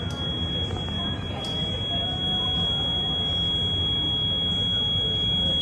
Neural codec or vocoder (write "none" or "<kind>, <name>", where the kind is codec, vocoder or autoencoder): none